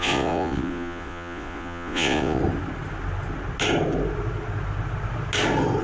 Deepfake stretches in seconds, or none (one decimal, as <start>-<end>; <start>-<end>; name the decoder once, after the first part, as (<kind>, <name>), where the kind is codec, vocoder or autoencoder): 0.0-2.4 (vocoder, Vocos)